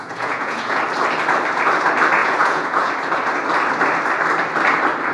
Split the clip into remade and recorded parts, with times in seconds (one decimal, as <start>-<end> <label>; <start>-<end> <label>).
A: 0.0-0.8 remade; 0.8-2.2 recorded; 2.2-2.9 remade; 2.9-5.1 recorded